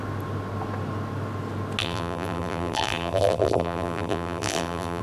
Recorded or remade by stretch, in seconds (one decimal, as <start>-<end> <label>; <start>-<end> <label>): 0.0-1.8 recorded; 1.8-5.0 remade